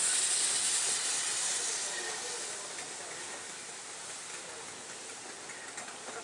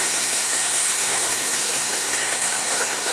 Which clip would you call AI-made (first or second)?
second